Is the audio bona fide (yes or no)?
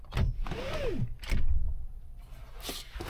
yes